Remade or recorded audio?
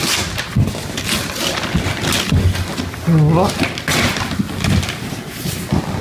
recorded